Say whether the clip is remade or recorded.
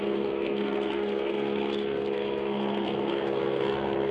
remade